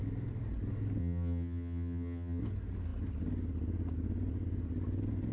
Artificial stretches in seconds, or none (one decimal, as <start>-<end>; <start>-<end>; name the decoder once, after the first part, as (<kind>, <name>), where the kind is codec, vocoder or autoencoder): 1.0-2.4 (vocoder, HiFi-GAN)